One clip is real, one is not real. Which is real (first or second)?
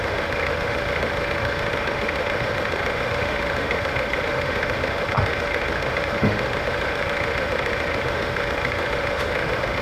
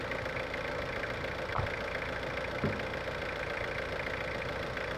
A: second